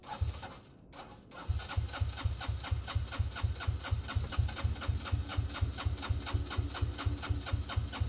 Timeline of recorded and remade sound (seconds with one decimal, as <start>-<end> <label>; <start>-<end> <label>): 0.0-8.1 recorded